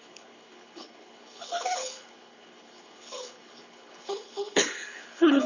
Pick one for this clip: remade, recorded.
remade